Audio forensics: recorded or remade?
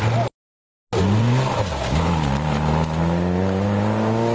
recorded